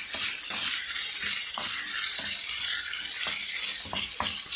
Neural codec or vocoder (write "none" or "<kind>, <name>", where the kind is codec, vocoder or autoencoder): none